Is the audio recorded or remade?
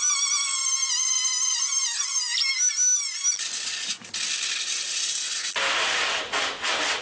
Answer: recorded